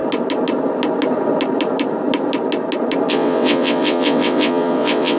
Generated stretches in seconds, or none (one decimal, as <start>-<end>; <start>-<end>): 3.1-5.2